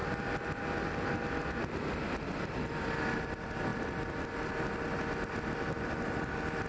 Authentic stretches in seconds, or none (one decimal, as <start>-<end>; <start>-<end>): 0.0-6.7